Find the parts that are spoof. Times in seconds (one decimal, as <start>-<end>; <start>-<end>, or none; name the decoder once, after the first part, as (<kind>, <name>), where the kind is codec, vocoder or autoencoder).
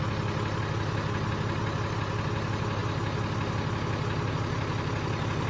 none